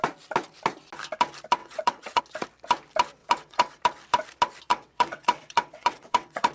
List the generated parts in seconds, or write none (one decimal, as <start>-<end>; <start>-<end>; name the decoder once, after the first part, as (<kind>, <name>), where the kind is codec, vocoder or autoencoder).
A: 1.6-2.2 (vocoder, WaveNeXt); 3.2-3.8; 4.7-6.5